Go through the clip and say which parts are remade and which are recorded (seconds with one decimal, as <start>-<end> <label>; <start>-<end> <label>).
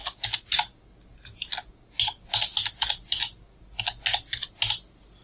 0.0-5.2 recorded